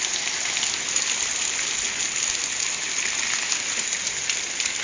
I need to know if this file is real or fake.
real